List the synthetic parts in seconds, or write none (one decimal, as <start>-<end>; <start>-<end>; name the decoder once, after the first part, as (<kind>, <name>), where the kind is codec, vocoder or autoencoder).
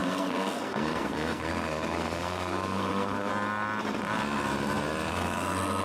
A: 0.0-3.3 (codec, SNAC); 5.1-5.8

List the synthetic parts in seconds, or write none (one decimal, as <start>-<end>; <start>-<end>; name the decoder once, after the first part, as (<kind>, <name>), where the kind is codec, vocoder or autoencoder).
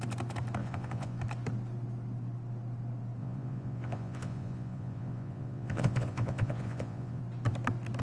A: 0.6-1.2 (vocoder, Vocos); 3.2-7.2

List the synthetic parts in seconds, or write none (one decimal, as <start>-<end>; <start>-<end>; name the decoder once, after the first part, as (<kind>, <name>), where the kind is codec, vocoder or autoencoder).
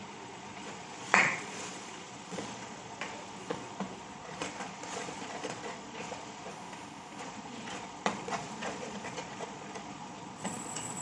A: 0.0-6.5 (vocoder, Vocos); 7.2-11.0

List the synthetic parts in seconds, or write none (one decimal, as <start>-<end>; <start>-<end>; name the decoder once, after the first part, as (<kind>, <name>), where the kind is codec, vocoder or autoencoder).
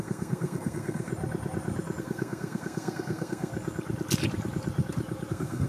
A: 0.0-1.1 (codec, SNAC); 2.0-3.5; 5.3-5.7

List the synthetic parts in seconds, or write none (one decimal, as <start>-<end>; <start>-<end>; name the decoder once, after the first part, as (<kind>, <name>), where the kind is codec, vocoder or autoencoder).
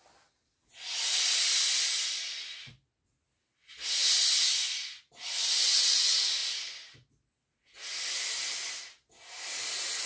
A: none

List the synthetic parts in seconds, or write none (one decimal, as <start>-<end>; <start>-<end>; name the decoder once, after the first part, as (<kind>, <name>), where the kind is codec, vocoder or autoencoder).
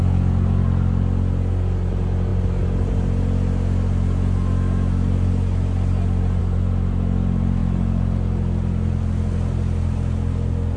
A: none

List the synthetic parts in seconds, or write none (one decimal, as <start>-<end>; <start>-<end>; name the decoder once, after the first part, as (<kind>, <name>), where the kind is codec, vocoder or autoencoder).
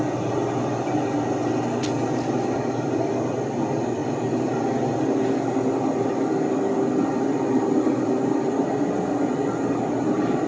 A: none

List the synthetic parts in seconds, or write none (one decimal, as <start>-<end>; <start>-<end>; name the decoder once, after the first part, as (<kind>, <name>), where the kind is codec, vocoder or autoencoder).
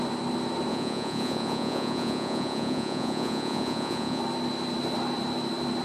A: 0.7-4.2 (vocoder, Vocos)